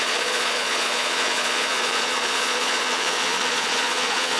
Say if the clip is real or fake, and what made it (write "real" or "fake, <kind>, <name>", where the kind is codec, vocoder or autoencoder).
fake, vocoder, Vocos